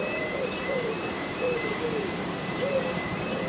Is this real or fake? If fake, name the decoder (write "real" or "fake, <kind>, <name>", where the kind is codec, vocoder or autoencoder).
fake, vocoder, BigVGAN v2